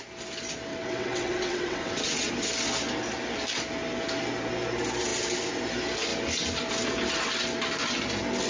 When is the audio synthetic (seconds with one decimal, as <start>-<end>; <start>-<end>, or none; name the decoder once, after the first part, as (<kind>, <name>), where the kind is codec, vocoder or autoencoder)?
0.7-2.3 (vocoder, WaveNeXt)